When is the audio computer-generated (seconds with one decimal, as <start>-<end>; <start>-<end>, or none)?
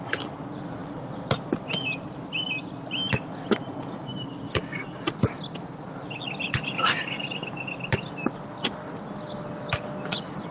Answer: none